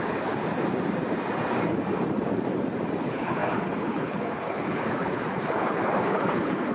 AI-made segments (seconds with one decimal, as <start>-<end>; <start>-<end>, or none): 0.0-0.4; 3.0-6.7